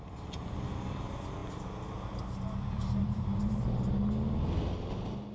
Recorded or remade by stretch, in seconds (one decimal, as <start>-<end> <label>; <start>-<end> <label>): 0.0-5.3 recorded